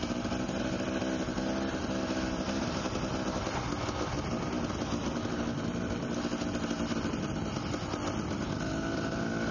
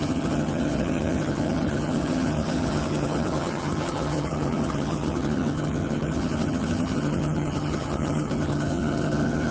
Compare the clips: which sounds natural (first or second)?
first